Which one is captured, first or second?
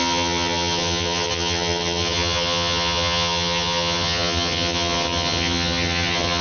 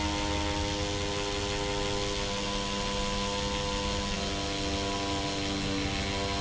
second